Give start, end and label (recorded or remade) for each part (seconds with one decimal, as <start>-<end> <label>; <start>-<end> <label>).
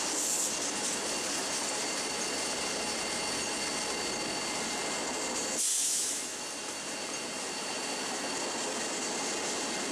0.0-5.7 recorded; 5.7-6.4 remade; 6.4-9.9 recorded